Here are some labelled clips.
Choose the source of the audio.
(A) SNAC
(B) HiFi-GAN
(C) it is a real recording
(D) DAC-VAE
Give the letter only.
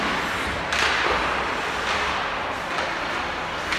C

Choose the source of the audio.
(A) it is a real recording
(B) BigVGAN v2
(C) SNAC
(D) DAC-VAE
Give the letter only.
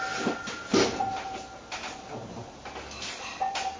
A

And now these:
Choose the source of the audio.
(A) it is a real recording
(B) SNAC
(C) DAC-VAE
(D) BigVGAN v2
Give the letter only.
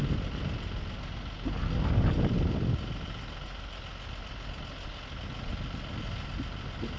A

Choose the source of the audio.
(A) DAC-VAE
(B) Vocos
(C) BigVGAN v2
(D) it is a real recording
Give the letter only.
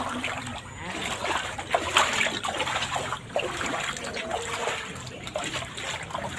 D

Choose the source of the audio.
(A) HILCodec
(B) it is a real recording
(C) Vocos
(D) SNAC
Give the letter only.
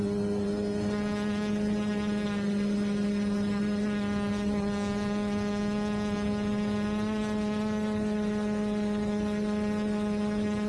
B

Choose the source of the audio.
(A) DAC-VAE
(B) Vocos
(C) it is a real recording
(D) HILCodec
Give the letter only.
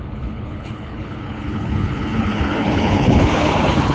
D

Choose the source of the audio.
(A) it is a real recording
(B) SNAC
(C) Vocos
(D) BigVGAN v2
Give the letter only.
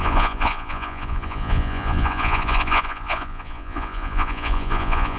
C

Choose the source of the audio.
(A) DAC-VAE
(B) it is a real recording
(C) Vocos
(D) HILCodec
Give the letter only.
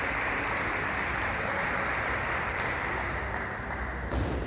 B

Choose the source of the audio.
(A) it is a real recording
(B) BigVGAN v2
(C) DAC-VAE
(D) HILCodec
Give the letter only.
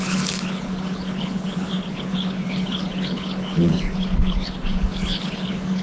D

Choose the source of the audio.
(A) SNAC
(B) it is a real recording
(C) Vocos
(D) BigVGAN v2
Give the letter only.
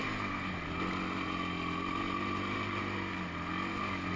B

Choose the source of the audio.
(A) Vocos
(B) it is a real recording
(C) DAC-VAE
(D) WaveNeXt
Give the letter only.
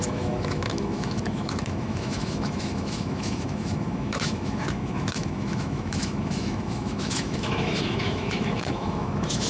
C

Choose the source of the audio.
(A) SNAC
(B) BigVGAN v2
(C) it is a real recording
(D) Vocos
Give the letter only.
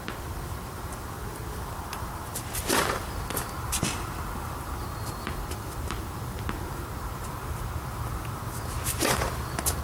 B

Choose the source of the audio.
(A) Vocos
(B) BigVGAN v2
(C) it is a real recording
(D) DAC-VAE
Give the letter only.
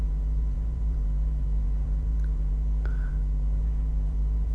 B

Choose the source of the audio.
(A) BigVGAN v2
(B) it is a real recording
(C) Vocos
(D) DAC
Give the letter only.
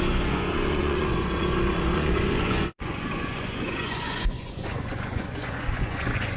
C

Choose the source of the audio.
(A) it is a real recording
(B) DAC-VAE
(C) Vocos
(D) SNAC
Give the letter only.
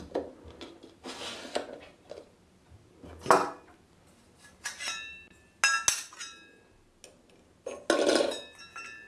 A